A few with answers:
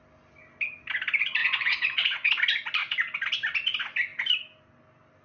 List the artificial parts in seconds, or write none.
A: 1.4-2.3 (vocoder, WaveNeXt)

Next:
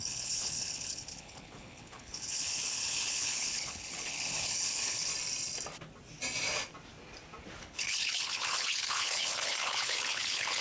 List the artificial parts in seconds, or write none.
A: 0.0-5.1 (codec, HILCodec); 7.6-10.6

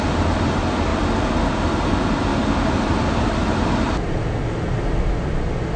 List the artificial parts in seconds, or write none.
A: none

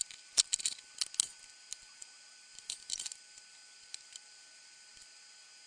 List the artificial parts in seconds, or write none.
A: 0.0-0.9 (vocoder, BigVGAN v2); 2.0-4.9

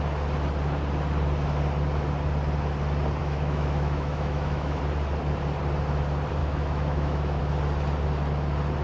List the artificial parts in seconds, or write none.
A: 3.2-4.8 (autoencoder, DAC-VAE); 6.4-7.4

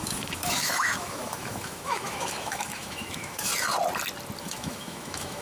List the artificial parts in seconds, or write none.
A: 0.0-3.5 (autoencoder, DAC-VAE); 4.4-5.4

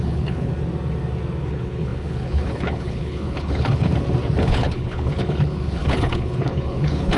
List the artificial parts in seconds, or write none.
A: 0.0-0.5 (codec, HILCodec); 1.4-3.9; 4.4-7.2